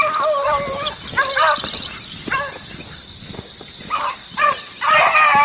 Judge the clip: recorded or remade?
recorded